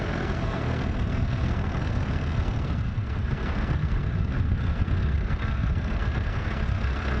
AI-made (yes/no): yes